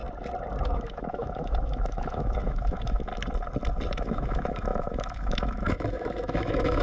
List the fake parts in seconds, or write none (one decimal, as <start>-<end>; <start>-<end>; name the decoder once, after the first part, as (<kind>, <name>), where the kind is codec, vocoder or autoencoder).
0.6-3.1 (autoencoder, DAC-VAE); 3.9-6.8